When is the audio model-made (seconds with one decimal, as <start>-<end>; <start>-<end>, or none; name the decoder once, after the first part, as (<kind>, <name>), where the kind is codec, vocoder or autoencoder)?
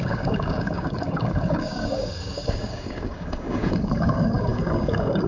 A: 0.0-5.3 (codec, DAC)